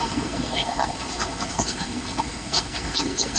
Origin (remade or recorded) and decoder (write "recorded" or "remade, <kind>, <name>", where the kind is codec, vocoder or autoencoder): remade, codec, SNAC